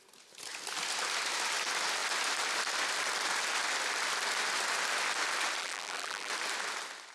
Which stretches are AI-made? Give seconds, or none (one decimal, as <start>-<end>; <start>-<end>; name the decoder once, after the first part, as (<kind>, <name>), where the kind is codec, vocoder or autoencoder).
5.6-6.3 (vocoder, BigVGAN v2)